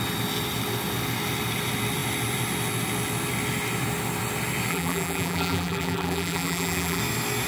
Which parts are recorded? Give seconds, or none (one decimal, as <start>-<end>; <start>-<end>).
0.0-4.7; 7.0-7.5